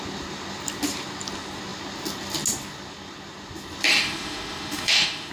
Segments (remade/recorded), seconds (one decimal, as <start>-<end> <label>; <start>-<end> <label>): 0.0-3.9 recorded; 3.9-5.3 remade